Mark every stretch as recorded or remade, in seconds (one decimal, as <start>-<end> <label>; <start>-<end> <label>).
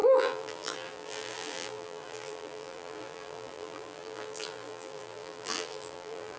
0.0-6.4 remade